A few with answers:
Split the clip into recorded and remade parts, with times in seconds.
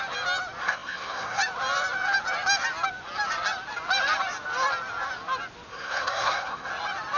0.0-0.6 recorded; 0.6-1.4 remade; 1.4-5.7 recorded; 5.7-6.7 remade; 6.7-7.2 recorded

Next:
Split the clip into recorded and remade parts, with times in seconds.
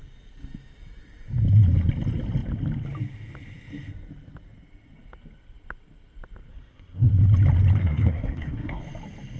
0.0-6.5 recorded; 6.5-7.1 remade; 7.1-7.8 recorded; 7.8-8.8 remade; 8.8-9.4 recorded